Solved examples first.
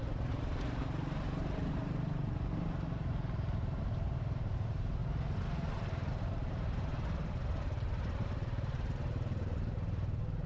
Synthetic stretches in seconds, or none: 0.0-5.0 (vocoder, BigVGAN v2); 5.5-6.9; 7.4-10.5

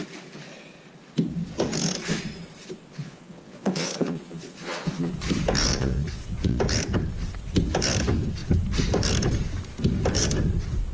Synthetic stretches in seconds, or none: 3.0-5.1 (vocoder, Vocos); 5.7-6.6

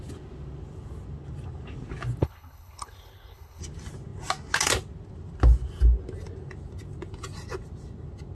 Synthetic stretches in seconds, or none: 2.2-3.6 (codec, HILCodec)

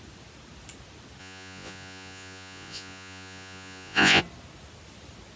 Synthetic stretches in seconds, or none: 1.2-4.2 (vocoder, Vocos)

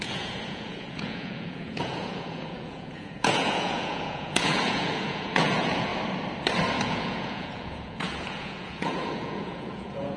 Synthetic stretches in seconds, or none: 0.0-5.9 (vocoder, Vocos); 6.8-10.2

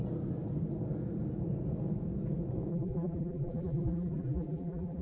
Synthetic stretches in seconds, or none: 2.7-5.0 (vocoder, BigVGAN v2)

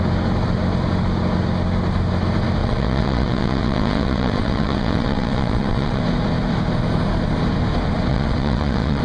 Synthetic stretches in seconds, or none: 2.6-6.0 (vocoder, WaveNeXt); 8.1-9.0

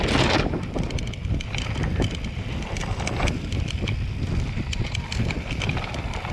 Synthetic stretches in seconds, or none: none